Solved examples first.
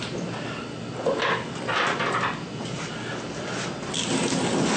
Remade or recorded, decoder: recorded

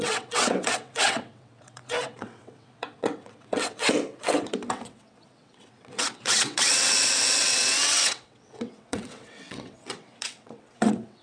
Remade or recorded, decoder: remade, vocoder, WaveNeXt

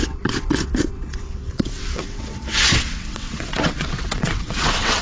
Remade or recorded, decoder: remade, vocoder, WaveNeXt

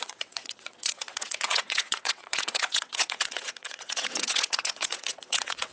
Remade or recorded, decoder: remade, vocoder, WaveNeXt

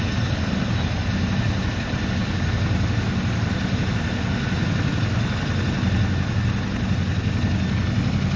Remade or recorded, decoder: recorded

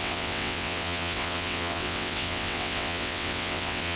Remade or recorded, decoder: remade, vocoder, WaveNeXt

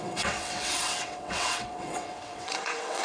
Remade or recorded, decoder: remade, vocoder, WaveNeXt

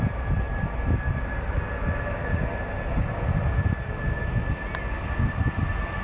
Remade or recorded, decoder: recorded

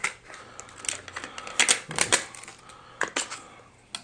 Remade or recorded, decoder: recorded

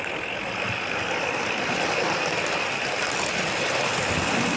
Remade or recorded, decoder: recorded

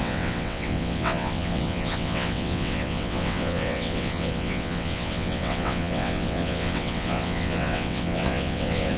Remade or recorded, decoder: remade, vocoder, WaveNeXt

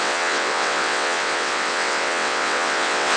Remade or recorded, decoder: remade, vocoder, WaveNeXt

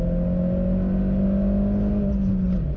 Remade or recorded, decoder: recorded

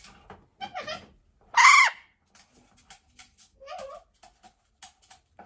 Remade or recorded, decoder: recorded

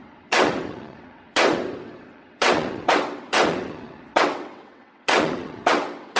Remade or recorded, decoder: remade, vocoder, WaveNeXt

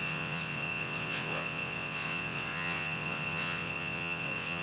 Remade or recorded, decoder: remade, vocoder, WaveNeXt